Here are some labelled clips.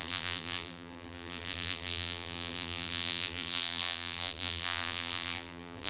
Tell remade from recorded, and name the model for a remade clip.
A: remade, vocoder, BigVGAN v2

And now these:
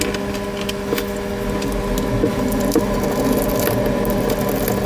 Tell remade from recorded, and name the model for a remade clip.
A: recorded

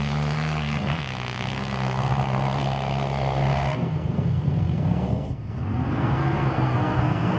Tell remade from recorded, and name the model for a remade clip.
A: remade, codec, SNAC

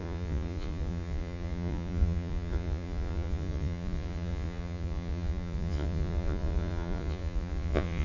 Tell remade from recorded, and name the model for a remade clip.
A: remade, vocoder, Vocos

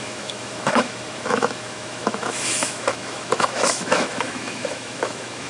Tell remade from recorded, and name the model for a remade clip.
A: remade, autoencoder, DAC-VAE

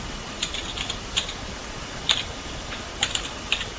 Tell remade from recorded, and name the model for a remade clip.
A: recorded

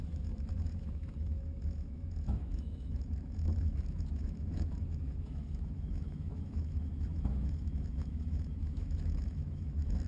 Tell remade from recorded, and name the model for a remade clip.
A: remade, autoencoder, DAC-VAE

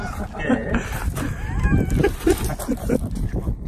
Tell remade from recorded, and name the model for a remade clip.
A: recorded